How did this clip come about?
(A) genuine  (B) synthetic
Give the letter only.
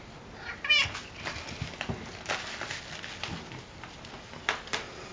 A